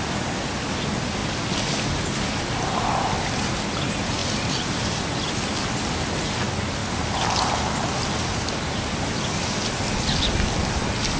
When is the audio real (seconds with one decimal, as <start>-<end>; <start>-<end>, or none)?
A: 0.0-11.2